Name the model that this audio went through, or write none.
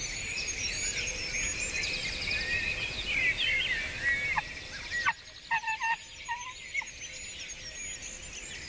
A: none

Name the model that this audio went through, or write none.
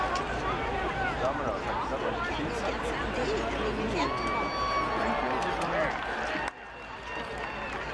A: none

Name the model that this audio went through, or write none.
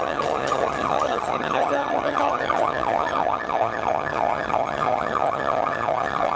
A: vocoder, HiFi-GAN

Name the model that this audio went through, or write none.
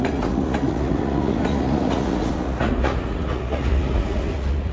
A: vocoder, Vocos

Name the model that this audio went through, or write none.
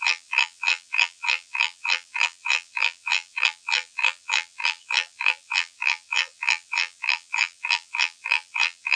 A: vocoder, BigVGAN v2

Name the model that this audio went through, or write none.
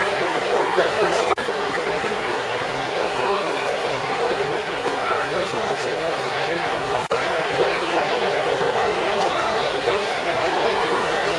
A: codec, SNAC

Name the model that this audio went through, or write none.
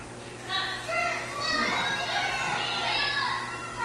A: none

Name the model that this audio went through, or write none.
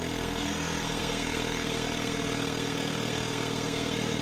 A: codec, SNAC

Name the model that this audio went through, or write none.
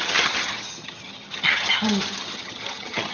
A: vocoder, HiFi-GAN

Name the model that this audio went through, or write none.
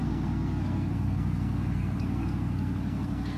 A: codec, SNAC